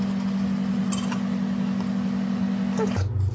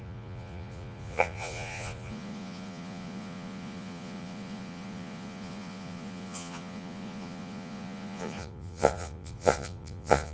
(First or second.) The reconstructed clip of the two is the second